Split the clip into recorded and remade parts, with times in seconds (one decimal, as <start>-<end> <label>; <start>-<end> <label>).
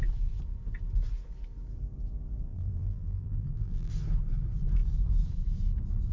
0.0-2.5 recorded; 2.5-3.9 remade; 3.9-6.1 recorded